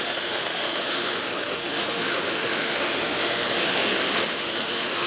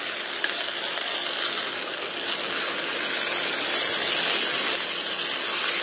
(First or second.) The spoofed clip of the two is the first